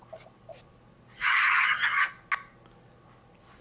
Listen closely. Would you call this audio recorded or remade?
recorded